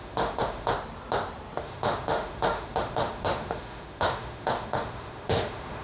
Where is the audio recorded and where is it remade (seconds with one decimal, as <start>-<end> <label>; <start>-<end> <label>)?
0.0-0.7 remade; 0.7-1.6 recorded; 1.6-5.8 remade